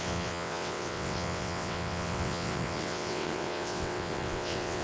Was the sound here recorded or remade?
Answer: remade